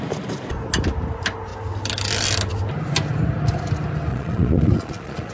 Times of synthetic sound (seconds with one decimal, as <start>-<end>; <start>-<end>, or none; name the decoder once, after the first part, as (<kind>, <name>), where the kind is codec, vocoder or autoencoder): 4.1-5.3 (vocoder, Vocos)